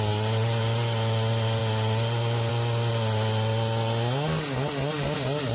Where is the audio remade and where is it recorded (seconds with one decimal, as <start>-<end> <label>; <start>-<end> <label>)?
0.0-5.5 recorded